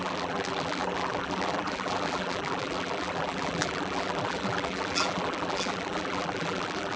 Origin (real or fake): fake